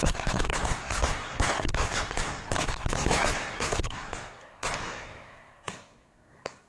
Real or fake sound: fake